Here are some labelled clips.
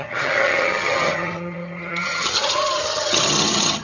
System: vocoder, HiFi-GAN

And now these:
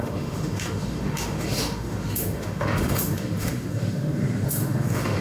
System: autoencoder, DAC-VAE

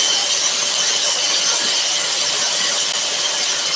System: none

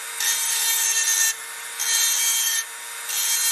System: none